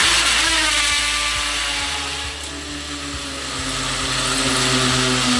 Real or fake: real